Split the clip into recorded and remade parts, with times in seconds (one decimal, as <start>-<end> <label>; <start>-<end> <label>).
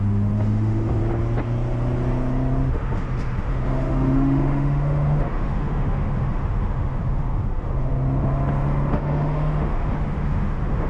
0.0-1.0 remade; 1.0-2.7 recorded; 2.7-7.9 remade; 7.9-8.9 recorded; 8.9-10.9 remade